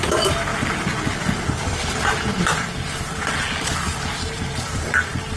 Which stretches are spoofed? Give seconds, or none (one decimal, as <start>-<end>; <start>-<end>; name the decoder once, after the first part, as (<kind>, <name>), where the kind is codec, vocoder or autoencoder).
0.0-5.4 (vocoder, BigVGAN v2)